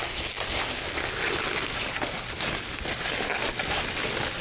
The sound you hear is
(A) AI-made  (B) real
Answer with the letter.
B